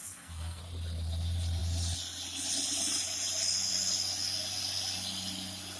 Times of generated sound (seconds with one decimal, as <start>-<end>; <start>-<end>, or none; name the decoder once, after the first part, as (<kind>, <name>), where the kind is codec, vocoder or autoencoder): 0.0-0.6 (codec, SNAC)